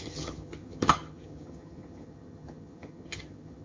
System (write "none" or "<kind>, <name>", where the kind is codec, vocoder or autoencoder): vocoder, HiFi-GAN